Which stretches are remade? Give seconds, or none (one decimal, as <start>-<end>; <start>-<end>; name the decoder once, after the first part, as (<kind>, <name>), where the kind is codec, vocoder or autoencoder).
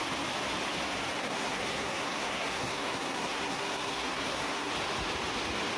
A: 1.2-4.7 (codec, SNAC)